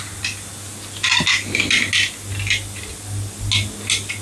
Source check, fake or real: real